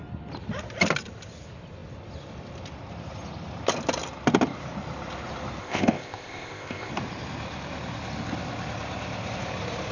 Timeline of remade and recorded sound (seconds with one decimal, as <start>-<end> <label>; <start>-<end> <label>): 0.0-5.6 recorded; 5.6-6.9 remade; 6.9-9.9 recorded